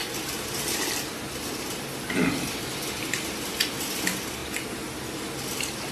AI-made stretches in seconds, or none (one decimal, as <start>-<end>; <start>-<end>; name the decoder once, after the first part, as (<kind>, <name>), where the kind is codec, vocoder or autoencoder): none